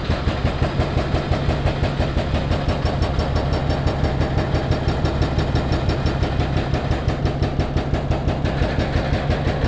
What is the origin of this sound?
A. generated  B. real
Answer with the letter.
B